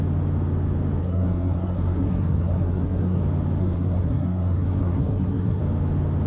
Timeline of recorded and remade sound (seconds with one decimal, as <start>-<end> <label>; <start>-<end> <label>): 0.0-1.0 recorded; 1.0-3.2 remade; 3.2-3.6 recorded; 3.6-5.6 remade; 5.6-6.3 recorded

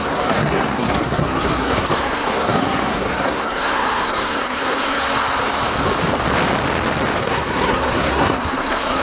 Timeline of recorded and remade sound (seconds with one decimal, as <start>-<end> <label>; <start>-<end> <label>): 0.0-5.0 remade; 5.0-7.2 recorded; 7.2-9.0 remade

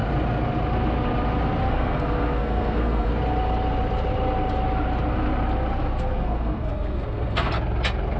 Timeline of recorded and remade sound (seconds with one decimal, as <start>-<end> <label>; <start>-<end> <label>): 0.0-1.7 recorded; 1.7-3.1 remade; 3.1-6.0 recorded; 6.0-7.5 remade; 7.5-8.2 recorded